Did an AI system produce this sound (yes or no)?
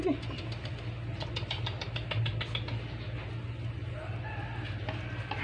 no